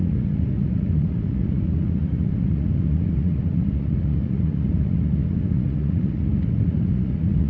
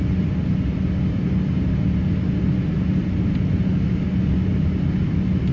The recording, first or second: second